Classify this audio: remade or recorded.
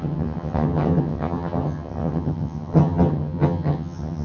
remade